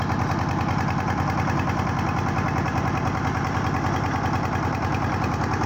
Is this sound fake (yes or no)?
no